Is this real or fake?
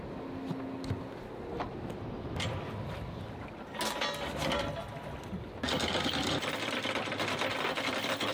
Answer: real